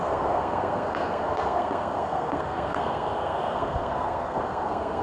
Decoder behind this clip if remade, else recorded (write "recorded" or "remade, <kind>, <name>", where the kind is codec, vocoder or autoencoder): remade, codec, SNAC